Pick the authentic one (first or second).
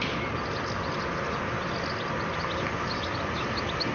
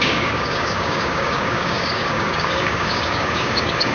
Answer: first